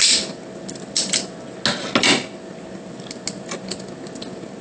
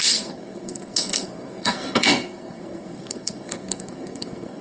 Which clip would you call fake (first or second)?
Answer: second